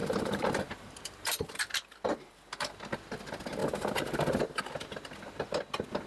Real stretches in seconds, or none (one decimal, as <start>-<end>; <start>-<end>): 2.8-3.6; 4.6-6.1